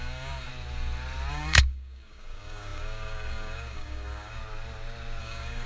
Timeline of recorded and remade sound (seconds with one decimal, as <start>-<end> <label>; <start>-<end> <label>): 0.0-0.5 remade; 0.5-1.3 recorded; 1.3-4.4 remade; 4.4-5.2 recorded; 5.2-5.7 remade